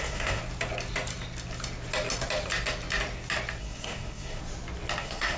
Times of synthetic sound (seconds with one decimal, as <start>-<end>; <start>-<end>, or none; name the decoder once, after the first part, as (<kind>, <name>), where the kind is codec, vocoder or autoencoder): 0.0-0.4 (codec, SNAC); 3.6-4.4; 5.0-5.4

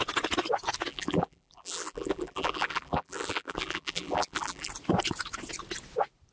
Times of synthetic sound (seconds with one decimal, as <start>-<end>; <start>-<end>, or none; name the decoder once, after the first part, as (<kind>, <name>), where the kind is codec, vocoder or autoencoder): 0.9-4.7 (vocoder, BigVGAN v2)

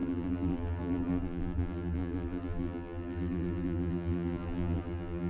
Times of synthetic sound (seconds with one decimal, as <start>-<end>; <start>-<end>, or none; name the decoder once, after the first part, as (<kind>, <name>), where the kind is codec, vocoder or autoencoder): 0.0-5.3 (vocoder, BigVGAN v2)

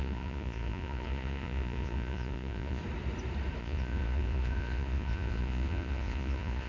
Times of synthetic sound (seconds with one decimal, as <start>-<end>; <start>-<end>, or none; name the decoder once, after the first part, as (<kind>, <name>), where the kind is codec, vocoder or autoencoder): 0.0-2.8 (vocoder, Vocos); 3.6-6.7

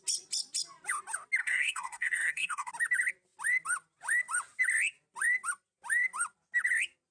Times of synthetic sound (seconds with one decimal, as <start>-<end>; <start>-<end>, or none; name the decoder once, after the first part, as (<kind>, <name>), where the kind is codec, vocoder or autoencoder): 1.4-2.7 (codec, SNAC)

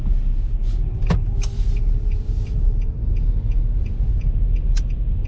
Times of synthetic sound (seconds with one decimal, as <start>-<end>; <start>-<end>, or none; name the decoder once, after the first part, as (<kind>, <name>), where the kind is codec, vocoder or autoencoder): none

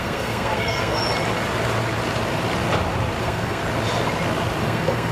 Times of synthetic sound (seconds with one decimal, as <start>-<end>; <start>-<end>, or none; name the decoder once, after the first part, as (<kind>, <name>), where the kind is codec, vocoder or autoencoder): 0.0-1.0 (codec, SNAC); 3.2-3.6; 4.6-5.1